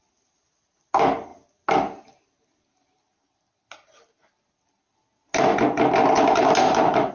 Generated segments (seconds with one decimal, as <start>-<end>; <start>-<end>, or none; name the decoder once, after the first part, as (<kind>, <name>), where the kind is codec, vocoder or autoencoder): none